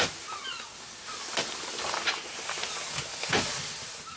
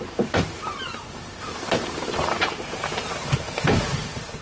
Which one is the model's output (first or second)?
second